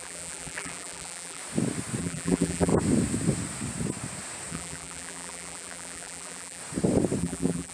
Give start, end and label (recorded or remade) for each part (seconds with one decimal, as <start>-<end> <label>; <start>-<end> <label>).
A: 0.0-1.4 remade; 1.4-2.0 recorded; 2.0-2.7 remade; 2.7-4.5 recorded; 4.5-6.6 remade; 6.6-7.2 recorded; 7.2-7.7 remade